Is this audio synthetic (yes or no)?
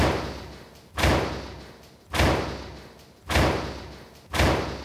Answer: no